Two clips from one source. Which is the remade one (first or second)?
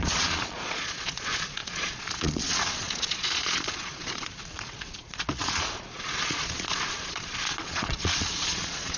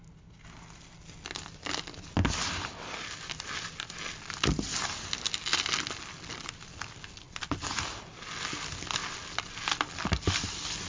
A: first